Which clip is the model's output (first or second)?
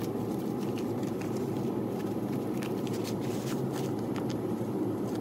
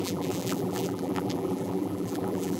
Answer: second